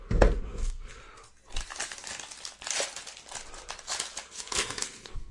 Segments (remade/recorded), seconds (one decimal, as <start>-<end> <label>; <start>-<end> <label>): 0.0-1.0 remade; 1.0-4.2 recorded; 4.2-5.3 remade